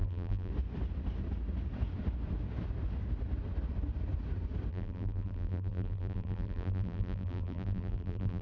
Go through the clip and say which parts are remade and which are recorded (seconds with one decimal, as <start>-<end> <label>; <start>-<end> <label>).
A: 0.0-0.5 remade; 0.5-4.7 recorded; 4.7-8.4 remade